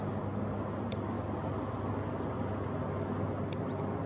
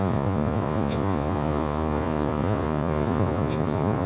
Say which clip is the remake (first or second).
second